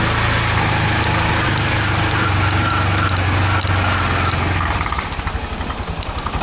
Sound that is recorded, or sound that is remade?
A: recorded